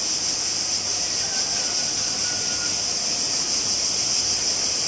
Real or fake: real